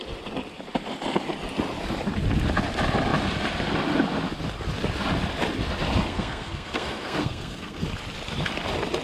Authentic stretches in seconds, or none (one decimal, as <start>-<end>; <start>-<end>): 0.0-6.1; 7.8-9.0